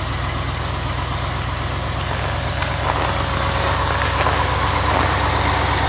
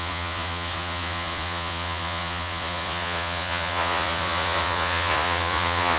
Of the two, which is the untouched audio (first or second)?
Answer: first